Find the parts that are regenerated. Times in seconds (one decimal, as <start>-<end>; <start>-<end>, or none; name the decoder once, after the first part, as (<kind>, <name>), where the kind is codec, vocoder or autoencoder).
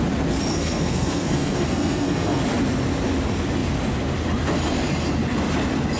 0.5-2.4 (codec, SNAC)